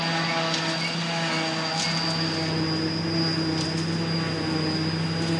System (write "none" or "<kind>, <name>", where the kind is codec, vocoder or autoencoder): none